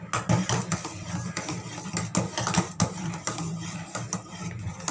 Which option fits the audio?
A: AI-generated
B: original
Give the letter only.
B